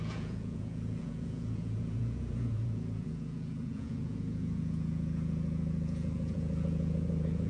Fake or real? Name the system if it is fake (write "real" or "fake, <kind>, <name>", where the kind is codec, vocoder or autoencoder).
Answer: fake, vocoder, Vocos